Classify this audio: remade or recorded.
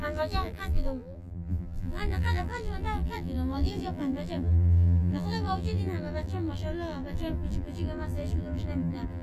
remade